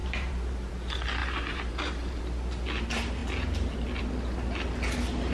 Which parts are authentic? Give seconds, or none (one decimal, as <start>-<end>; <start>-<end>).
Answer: 0.7-1.2; 2.2-5.3